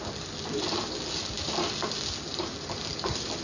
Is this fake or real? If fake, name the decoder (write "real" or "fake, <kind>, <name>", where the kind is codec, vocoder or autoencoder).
fake, vocoder, BigVGAN v2